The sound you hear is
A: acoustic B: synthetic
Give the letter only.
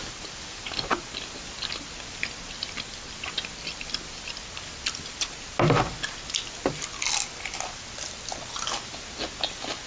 A